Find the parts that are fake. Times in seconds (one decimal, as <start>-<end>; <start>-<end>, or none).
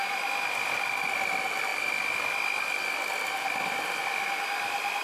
none